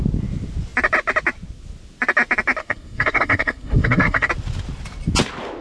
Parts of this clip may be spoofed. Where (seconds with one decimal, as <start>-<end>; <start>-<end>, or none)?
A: 2.6-4.3